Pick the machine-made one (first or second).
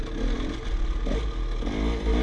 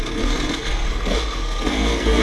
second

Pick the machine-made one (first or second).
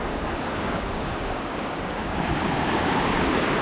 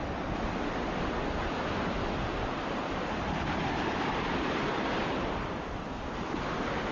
first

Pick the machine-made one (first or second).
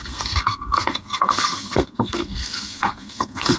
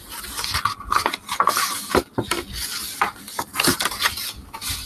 first